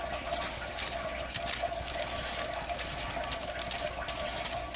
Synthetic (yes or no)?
no